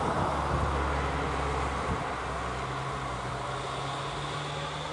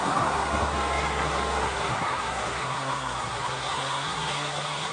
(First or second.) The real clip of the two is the first